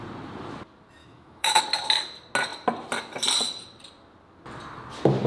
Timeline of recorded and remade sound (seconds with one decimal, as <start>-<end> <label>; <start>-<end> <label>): 0.0-1.0 recorded; 1.0-1.6 remade; 1.6-5.3 recorded